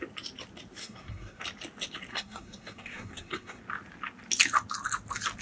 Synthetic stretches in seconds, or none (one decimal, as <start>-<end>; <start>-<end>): 0.8-1.4; 2.1-3.6